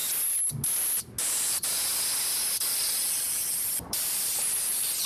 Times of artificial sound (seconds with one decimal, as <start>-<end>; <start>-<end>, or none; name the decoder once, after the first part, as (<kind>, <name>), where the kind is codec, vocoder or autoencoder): 3.1-5.1 (vocoder, BigVGAN v2)